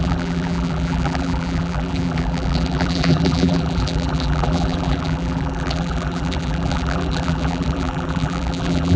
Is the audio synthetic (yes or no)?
yes